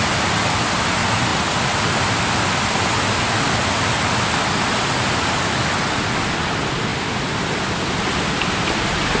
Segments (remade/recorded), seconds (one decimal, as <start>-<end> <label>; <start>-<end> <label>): 0.0-9.2 recorded

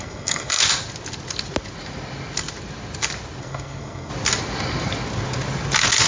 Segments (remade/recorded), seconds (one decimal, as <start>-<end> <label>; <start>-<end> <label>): 0.0-0.6 remade; 0.6-3.4 recorded; 3.4-4.1 remade; 4.1-6.1 recorded

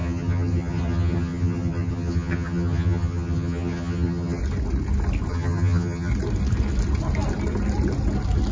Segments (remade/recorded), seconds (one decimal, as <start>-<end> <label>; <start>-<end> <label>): 0.0-4.4 remade; 4.4-5.3 recorded; 5.3-6.1 remade; 6.1-8.5 recorded